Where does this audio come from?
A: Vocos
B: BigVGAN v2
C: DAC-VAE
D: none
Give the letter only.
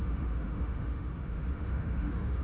C